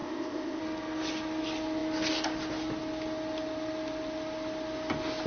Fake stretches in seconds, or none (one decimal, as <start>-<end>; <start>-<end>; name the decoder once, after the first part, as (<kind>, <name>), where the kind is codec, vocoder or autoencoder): 0.0-0.6 (codec, ZipCodec)